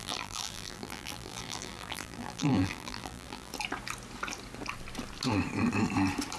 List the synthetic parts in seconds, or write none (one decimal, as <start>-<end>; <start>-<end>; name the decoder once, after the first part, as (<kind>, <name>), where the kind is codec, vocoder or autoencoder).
0.0-3.5 (vocoder, BigVGAN v2)